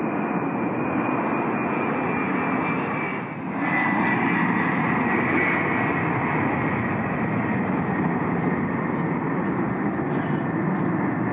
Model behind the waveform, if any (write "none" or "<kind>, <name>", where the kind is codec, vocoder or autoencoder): none